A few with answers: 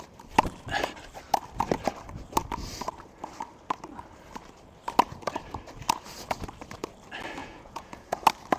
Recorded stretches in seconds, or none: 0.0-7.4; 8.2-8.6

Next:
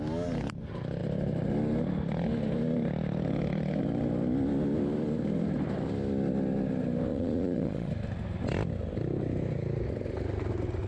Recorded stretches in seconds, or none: 0.0-7.1; 7.9-10.9